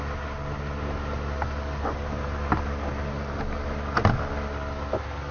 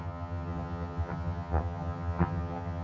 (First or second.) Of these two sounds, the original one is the first